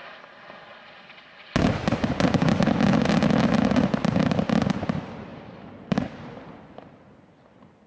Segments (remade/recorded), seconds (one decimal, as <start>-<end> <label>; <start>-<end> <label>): 0.0-5.3 recorded; 5.3-6.4 remade; 6.4-7.9 recorded